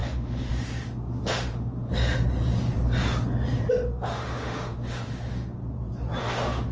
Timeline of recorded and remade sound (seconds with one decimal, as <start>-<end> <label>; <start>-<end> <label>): 0.0-1.9 remade; 1.9-3.7 recorded; 3.7-5.6 remade; 5.6-6.2 recorded; 6.2-6.7 remade